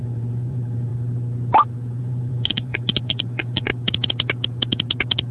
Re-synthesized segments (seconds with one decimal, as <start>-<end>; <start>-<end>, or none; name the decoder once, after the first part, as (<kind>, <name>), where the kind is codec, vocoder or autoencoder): 0.0-0.9 (vocoder, Vocos); 2.0-3.7